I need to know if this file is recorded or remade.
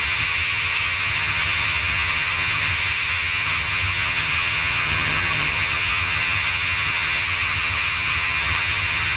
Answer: remade